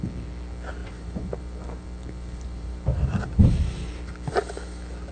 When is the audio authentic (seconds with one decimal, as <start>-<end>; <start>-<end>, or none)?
0.0-0.8; 3.9-5.1